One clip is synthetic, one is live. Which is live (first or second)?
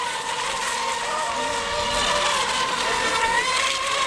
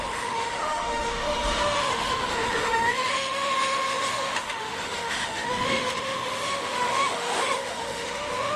first